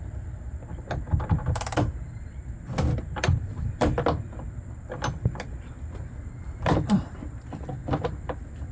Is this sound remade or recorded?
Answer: remade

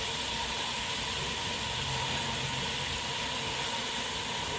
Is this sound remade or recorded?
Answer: recorded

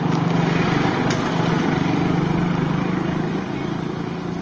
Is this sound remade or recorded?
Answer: recorded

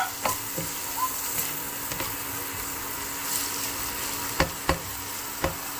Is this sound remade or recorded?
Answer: recorded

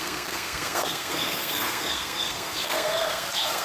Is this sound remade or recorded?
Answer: remade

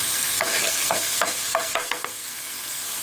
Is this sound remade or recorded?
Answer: remade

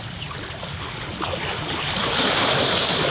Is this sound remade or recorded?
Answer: recorded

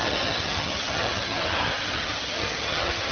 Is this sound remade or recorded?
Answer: remade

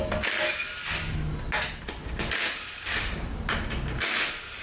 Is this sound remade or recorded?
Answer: recorded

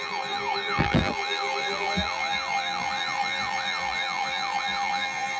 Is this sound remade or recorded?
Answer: remade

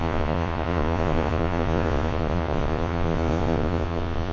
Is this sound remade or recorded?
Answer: remade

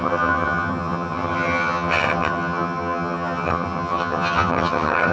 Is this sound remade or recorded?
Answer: remade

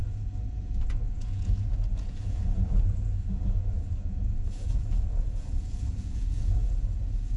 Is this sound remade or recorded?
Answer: remade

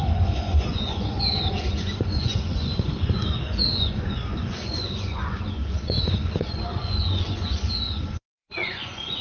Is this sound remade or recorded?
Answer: remade